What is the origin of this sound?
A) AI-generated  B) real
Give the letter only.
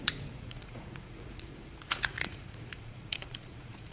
A